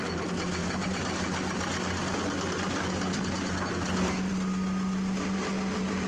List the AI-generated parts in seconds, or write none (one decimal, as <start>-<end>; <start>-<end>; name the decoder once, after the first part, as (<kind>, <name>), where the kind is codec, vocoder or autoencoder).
none